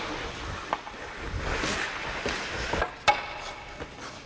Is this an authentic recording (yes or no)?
yes